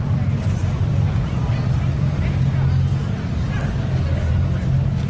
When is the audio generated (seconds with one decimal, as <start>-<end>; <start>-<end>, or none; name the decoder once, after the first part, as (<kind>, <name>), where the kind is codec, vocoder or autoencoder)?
0.6-1.5 (vocoder, BigVGAN v2)